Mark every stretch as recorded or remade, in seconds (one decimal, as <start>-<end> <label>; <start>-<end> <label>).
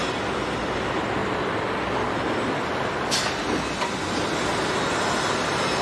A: 0.0-5.8 recorded